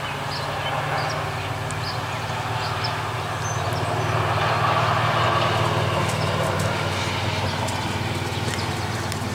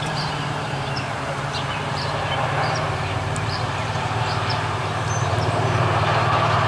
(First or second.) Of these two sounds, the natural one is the first